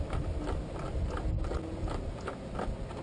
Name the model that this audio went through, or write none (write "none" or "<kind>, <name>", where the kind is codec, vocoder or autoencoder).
none